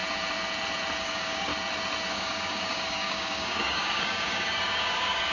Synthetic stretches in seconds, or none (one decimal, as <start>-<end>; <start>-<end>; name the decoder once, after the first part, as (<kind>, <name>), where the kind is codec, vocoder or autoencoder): 1.0-1.5 (codec, DAC); 2.1-5.3